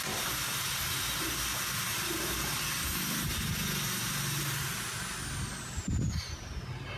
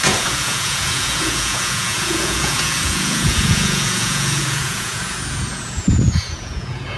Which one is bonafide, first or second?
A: first